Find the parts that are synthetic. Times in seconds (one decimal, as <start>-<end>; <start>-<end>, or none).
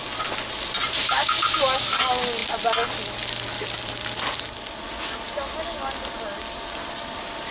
none